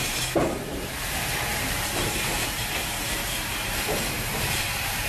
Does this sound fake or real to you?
fake